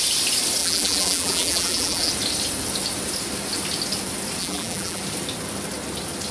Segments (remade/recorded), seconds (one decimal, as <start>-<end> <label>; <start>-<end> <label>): 0.0-0.6 recorded; 0.6-2.1 remade; 2.1-4.4 recorded; 4.4-5.0 remade; 5.0-6.3 recorded